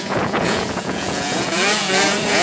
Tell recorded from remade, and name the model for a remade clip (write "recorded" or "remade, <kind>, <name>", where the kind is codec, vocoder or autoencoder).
remade, vocoder, Vocos